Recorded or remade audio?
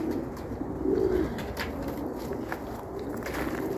recorded